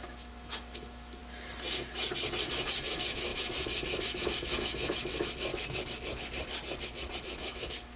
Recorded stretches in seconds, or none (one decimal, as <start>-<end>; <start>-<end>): 1.2-2.4; 5.5-7.2